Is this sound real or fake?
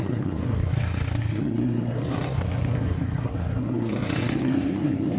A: fake